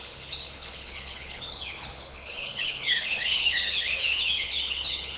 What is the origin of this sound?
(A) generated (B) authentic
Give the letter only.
A